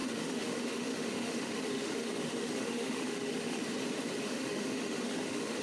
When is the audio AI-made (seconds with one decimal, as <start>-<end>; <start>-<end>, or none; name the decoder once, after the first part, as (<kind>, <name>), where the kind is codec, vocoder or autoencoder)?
0.0-3.6 (autoencoder, DAC-VAE); 4.2-5.6

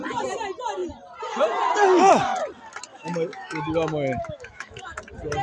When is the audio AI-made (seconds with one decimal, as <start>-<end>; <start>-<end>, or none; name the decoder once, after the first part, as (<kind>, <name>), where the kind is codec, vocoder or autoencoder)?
2.9-5.0 (autoencoder, DAC-VAE)

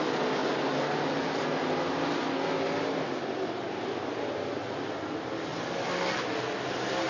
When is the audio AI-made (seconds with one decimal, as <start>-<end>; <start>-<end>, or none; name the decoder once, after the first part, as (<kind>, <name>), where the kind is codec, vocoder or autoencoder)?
none

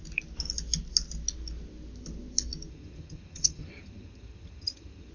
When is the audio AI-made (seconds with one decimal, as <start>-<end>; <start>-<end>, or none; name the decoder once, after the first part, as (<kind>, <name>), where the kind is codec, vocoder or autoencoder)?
2.7-5.1 (vocoder, HiFi-GAN)

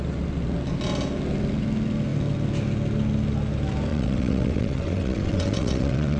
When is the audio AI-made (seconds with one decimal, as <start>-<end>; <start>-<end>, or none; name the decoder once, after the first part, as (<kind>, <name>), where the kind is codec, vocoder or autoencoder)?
3.9-6.2 (vocoder, WaveNeXt)

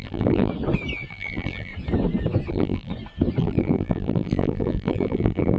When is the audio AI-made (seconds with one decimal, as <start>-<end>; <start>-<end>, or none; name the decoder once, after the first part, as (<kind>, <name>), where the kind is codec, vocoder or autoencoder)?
0.0-0.5 (vocoder, BigVGAN v2); 1.1-1.7; 2.5-2.9; 3.4-5.6

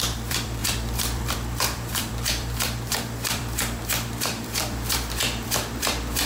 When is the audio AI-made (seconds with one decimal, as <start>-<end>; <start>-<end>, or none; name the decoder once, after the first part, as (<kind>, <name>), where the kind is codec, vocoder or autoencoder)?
0.0-6.3 (vocoder, BigVGAN v2)